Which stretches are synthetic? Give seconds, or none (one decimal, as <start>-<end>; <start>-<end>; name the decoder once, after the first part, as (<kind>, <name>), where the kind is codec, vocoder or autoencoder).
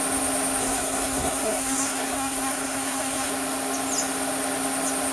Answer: 0.6-3.3 (codec, SNAC)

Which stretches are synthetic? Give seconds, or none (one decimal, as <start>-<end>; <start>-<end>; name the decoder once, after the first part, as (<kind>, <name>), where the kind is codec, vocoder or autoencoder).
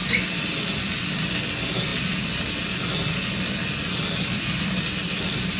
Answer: none